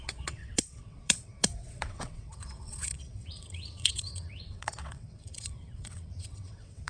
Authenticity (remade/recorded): remade